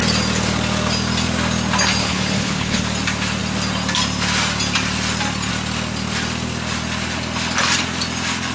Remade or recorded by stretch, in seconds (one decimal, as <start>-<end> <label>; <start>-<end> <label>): 0.0-2.0 recorded; 2.0-2.8 remade; 2.8-8.5 recorded